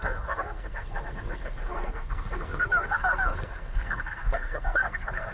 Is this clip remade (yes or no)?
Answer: yes